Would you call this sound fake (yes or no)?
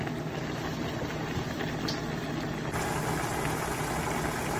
no